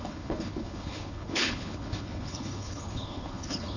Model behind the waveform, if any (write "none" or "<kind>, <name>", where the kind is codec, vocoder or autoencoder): codec, HILCodec